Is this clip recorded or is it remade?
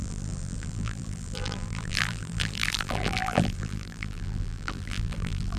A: remade